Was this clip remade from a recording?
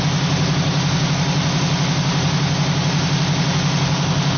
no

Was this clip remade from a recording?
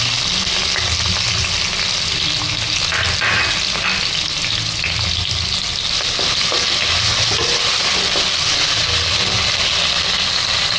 no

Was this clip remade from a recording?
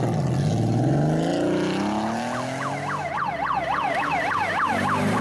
no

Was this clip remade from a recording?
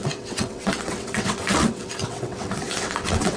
yes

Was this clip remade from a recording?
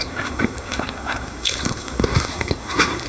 yes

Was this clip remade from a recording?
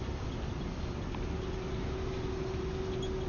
no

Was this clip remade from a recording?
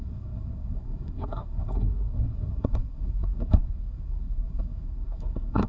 yes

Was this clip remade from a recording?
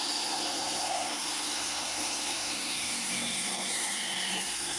yes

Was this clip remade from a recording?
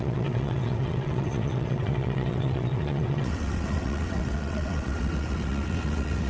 yes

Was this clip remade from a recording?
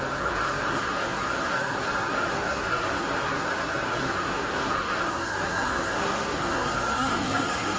yes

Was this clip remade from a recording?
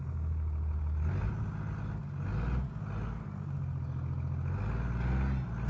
no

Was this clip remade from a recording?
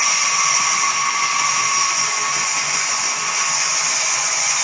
yes